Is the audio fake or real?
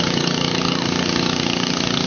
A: fake